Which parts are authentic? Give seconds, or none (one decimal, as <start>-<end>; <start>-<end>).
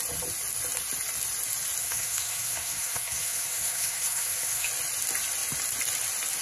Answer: 0.0-1.8; 4.7-6.4